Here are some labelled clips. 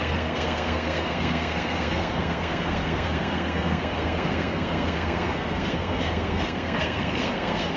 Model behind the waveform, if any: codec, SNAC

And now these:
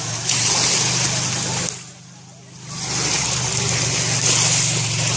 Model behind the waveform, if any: none